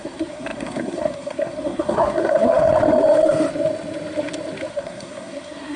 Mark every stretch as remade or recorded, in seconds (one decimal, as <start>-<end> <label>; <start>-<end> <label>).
0.0-2.7 remade; 2.7-4.7 recorded; 4.7-5.8 remade